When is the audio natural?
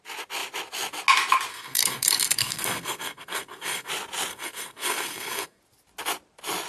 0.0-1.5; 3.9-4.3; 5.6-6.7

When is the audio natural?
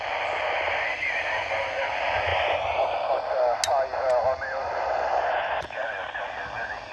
0.0-0.9; 1.8-6.9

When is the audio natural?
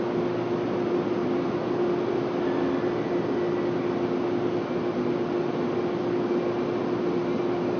0.0-7.8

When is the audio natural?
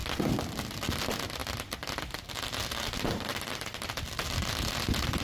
0.0-5.2